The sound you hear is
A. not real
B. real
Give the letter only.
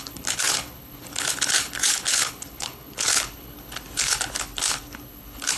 A